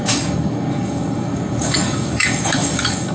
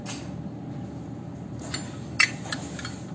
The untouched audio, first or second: second